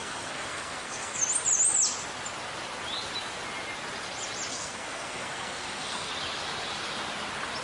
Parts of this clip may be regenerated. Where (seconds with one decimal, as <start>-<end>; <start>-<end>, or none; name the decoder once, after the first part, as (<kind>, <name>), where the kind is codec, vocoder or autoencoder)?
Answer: 0.0-1.2 (codec, SNAC); 4.5-6.1